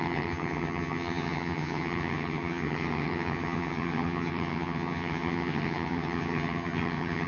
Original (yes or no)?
no